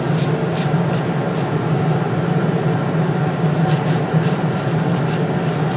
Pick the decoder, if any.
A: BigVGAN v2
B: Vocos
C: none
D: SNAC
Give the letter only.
C